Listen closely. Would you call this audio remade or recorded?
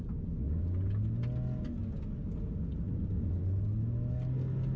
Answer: recorded